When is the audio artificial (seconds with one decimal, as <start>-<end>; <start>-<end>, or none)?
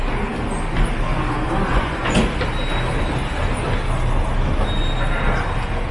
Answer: 1.7-2.2